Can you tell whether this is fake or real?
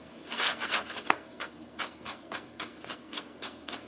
fake